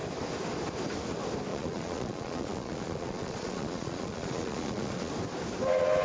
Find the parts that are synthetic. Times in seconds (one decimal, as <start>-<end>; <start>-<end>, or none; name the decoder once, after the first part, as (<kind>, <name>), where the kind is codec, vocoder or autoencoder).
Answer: 1.5-5.1 (vocoder, Vocos)